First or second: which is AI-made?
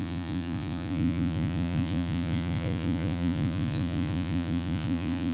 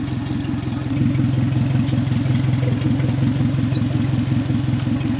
first